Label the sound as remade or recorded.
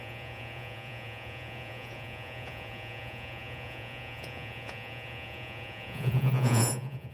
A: remade